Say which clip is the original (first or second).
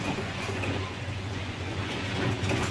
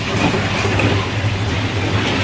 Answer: second